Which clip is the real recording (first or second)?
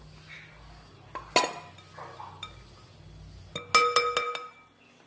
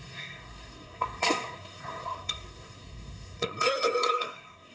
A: first